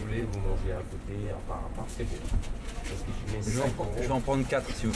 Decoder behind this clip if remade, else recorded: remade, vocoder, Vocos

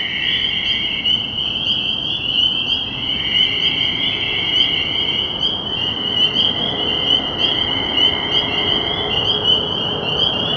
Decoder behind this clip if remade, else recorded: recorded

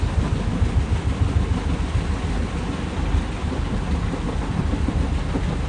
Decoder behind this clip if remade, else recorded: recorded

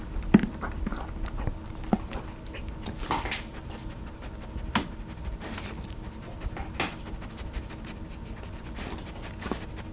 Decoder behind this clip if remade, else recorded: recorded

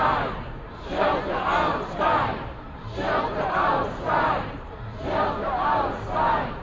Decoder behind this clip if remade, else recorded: remade, vocoder, BigVGAN v2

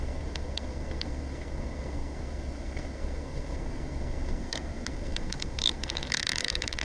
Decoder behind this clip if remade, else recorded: remade, codec, SNAC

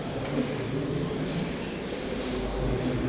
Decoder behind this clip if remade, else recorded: recorded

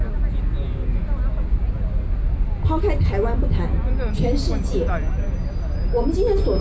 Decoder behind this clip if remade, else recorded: recorded